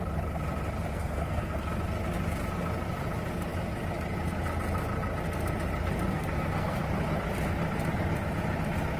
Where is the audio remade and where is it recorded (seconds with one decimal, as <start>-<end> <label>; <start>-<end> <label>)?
0.0-0.9 recorded; 0.9-1.7 remade; 1.7-6.1 recorded; 6.1-6.8 remade; 6.8-9.0 recorded

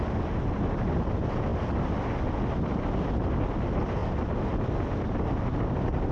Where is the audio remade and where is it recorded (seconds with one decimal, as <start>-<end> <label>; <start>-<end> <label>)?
0.0-6.1 recorded

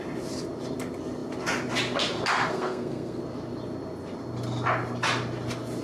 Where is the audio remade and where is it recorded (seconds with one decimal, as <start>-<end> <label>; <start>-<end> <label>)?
0.0-2.5 recorded; 2.5-3.2 remade; 3.2-5.8 recorded

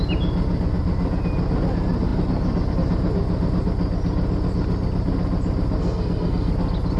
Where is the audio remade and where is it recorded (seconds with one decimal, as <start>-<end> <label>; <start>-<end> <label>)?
0.0-5.8 recorded; 5.8-6.5 remade; 6.5-7.0 recorded

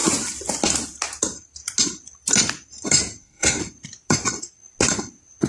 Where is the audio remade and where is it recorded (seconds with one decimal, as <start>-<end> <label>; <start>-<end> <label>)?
0.0-3.2 recorded; 3.2-3.6 remade; 3.6-5.5 recorded

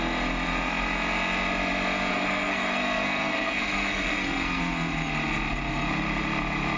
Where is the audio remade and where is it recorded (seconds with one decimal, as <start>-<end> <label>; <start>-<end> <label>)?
0.0-2.1 recorded; 2.1-4.6 remade; 4.6-6.8 recorded

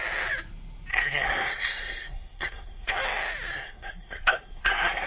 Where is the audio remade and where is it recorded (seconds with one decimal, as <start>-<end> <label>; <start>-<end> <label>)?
0.0-0.9 recorded; 0.9-2.9 remade; 2.9-3.5 recorded; 3.5-5.1 remade